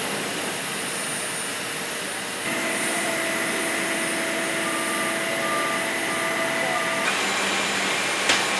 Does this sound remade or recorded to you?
recorded